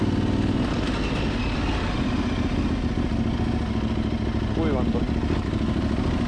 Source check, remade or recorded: recorded